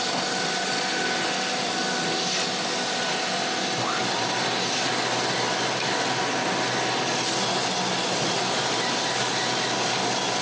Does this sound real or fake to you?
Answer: real